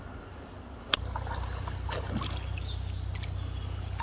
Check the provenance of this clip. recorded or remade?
recorded